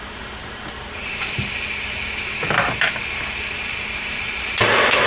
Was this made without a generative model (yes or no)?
yes